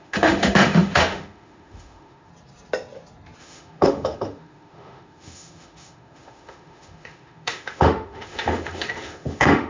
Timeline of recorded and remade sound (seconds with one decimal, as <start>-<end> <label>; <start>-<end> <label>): 0.0-2.3 remade; 2.3-3.4 recorded; 3.4-9.7 remade